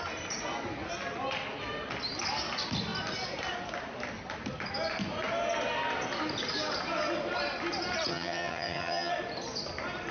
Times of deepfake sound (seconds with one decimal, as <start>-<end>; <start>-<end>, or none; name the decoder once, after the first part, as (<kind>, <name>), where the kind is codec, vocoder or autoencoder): 8.1-9.1 (vocoder, HiFi-GAN)